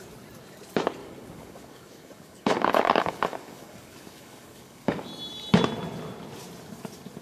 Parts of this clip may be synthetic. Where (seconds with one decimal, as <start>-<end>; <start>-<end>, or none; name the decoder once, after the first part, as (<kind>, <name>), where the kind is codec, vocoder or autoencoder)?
1.0-5.1 (codec, DAC)